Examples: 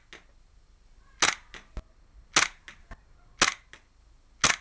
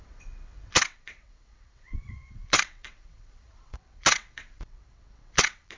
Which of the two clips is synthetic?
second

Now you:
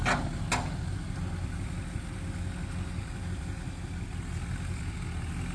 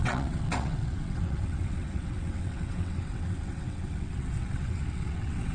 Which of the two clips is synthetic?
second